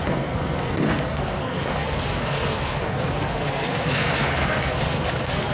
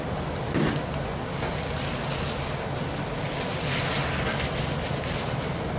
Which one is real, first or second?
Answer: second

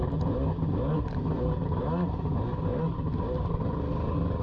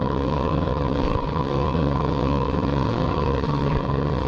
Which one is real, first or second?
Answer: first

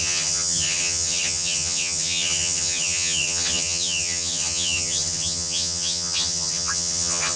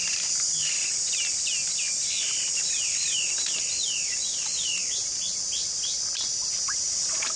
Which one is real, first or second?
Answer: second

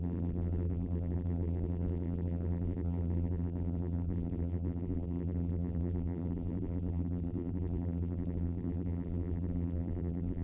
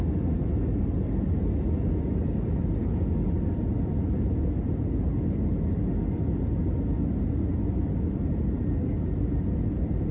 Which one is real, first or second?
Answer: second